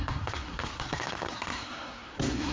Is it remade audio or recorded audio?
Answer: remade